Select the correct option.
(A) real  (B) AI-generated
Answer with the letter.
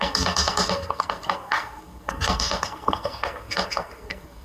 B